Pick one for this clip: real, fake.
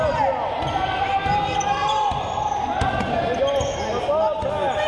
real